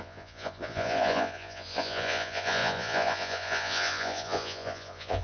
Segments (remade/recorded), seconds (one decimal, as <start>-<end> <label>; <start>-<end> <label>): 0.0-5.2 remade